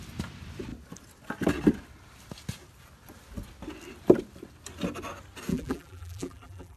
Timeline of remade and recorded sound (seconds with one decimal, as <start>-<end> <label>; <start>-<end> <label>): 0.0-5.5 recorded; 5.5-6.8 remade